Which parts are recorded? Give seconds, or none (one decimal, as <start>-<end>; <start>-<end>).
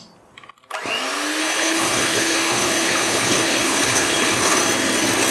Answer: 0.0-1.4; 4.6-5.3